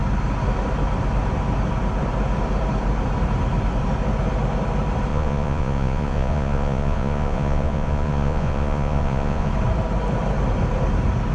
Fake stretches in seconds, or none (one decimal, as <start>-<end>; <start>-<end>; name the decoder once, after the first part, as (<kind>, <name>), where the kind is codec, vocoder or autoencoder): 5.1-9.5 (vocoder, Vocos)